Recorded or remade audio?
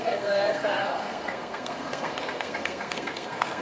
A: remade